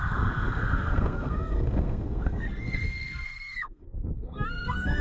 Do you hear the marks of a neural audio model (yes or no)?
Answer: yes